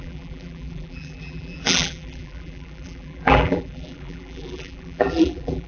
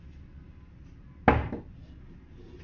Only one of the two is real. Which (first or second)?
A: second